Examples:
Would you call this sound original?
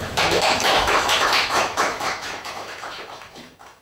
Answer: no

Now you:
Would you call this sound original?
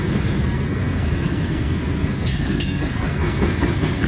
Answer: no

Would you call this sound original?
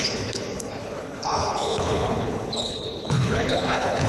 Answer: no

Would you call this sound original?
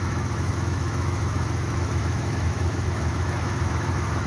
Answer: no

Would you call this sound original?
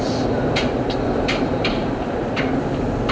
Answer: no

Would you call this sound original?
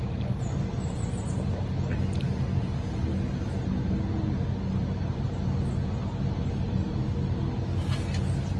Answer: yes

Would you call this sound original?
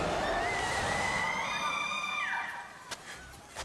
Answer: yes